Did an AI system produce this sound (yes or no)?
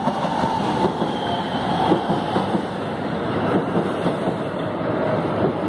no